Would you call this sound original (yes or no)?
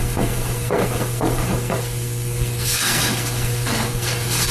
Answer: no